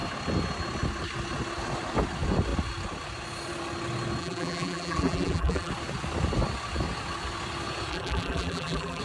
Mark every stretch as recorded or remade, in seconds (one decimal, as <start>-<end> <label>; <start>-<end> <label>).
0.0-4.2 recorded; 4.2-5.7 remade; 5.7-7.9 recorded; 7.9-9.0 remade